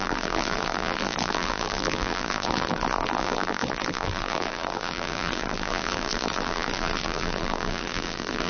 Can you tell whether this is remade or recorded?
remade